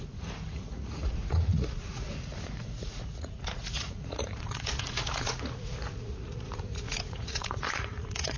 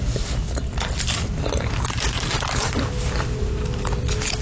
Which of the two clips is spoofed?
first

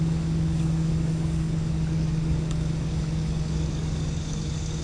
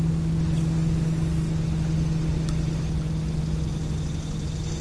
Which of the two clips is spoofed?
first